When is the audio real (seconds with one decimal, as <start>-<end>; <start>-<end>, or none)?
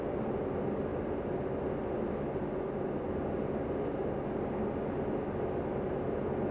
0.0-6.5